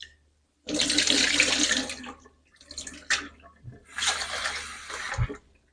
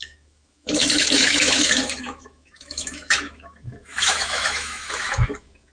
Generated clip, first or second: second